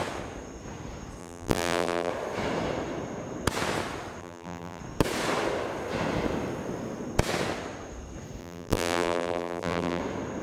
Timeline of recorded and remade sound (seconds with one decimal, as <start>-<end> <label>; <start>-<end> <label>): 0.0-1.2 recorded; 1.2-2.1 remade; 2.1-4.2 recorded; 4.2-4.8 remade; 4.8-8.4 recorded; 8.4-10.0 remade; 10.0-10.4 recorded